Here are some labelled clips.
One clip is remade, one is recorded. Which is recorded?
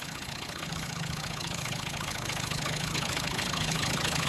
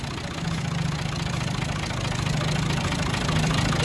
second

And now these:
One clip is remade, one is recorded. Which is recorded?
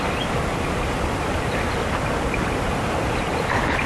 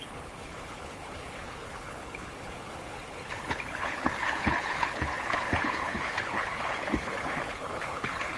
first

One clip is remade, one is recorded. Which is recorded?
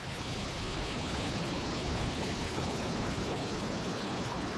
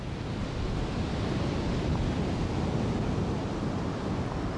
second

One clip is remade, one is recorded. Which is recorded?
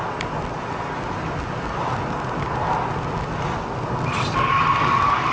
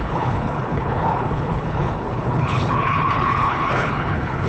first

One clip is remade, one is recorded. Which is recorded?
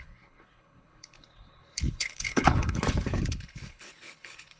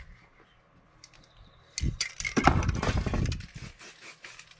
second